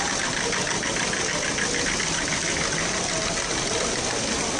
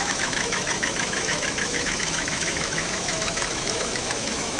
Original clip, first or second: first